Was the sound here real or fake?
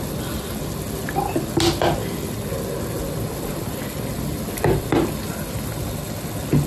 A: real